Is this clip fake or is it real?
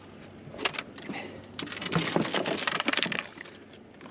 real